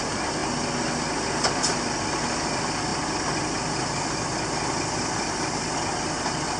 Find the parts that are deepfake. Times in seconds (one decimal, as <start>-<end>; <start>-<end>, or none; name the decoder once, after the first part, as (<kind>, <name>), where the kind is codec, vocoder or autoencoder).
none